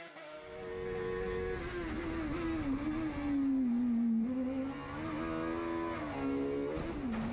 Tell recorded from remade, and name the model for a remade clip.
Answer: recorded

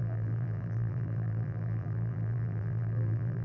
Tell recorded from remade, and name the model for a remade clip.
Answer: remade, vocoder, BigVGAN v2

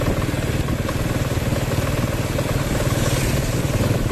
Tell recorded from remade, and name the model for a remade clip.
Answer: recorded